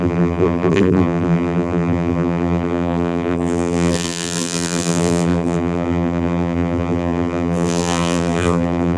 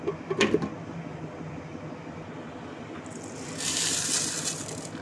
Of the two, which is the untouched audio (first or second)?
second